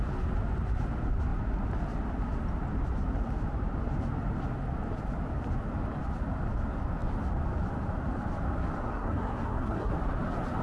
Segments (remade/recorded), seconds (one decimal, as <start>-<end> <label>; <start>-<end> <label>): 0.0-8.8 recorded; 8.8-9.9 remade; 9.9-10.6 recorded